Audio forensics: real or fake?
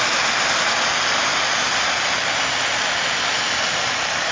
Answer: real